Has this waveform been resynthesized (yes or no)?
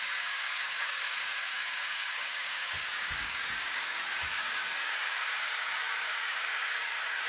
yes